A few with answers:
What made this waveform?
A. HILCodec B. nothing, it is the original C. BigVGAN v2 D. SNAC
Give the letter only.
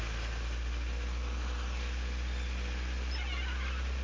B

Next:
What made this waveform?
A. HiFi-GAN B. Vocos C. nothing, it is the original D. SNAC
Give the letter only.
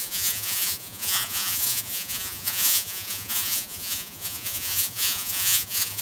B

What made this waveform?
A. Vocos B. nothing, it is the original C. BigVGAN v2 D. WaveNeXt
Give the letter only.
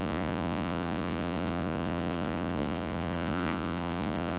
A